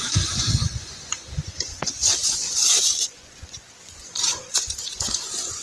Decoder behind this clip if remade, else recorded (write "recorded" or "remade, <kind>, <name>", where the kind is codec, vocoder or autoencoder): remade, vocoder, Vocos